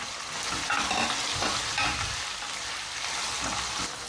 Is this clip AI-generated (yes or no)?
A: no